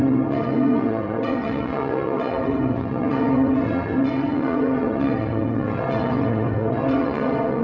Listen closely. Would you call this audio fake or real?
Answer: fake